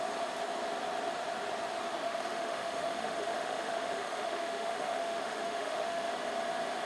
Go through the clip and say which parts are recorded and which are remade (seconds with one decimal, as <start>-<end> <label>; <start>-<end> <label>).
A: 0.0-2.0 recorded; 2.0-6.1 remade; 6.1-6.9 recorded